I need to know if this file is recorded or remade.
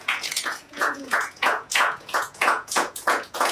remade